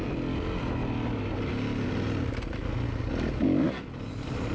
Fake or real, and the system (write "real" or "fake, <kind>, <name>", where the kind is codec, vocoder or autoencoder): real